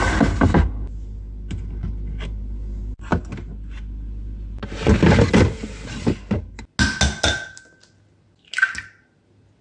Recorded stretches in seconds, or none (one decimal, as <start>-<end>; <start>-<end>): 0.0-9.6